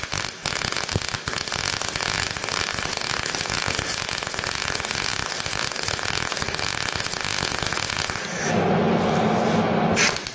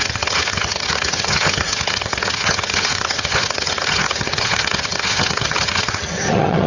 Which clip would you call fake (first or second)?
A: second